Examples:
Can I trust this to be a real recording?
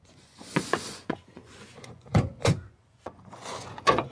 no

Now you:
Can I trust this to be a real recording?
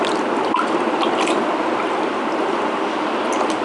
yes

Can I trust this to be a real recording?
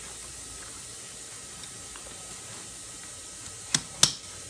yes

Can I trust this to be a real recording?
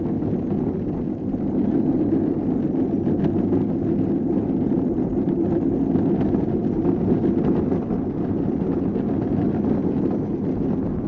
yes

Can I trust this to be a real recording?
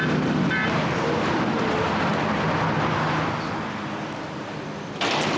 yes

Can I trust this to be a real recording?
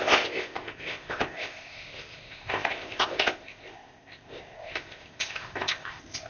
no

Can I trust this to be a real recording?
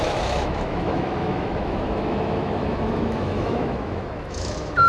no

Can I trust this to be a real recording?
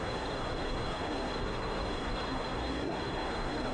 no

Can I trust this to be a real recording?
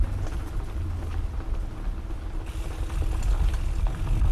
yes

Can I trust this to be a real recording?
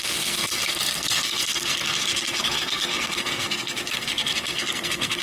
no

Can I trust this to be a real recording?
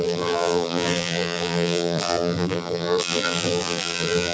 no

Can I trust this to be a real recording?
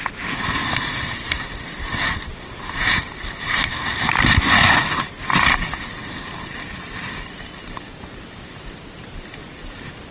yes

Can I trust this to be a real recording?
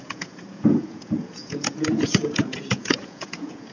no